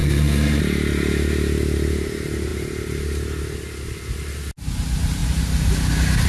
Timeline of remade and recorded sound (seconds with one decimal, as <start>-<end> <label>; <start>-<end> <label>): 0.0-0.6 remade; 0.6-6.3 recorded